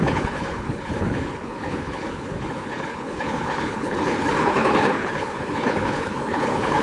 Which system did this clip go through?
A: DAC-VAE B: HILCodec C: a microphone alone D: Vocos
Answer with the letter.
B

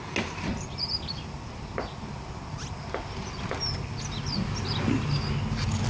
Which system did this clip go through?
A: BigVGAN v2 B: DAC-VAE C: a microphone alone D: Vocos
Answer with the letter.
C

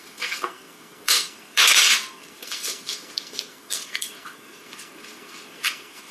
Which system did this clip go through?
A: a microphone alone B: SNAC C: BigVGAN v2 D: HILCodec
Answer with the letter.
B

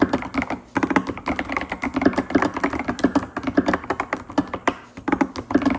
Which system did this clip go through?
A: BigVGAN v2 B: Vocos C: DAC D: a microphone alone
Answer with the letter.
D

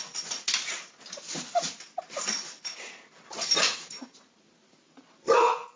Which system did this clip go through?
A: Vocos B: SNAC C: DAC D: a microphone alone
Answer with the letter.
D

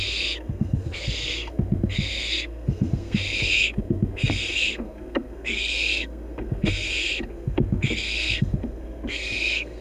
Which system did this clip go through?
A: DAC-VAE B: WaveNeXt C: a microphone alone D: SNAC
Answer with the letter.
D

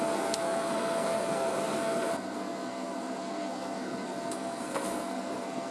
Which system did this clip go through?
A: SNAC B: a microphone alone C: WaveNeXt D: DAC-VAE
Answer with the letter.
A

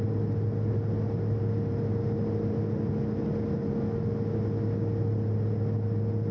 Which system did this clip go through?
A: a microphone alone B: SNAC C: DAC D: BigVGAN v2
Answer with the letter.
A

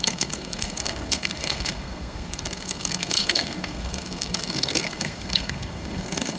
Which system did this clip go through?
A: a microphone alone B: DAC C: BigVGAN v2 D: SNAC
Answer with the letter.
D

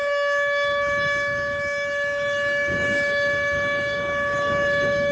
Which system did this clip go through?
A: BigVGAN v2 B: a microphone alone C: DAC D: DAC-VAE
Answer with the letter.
D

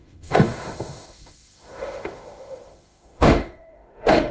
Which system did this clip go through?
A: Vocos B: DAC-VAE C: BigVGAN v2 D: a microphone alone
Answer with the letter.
B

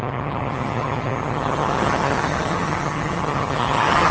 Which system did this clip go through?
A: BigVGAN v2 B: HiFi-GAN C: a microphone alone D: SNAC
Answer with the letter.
B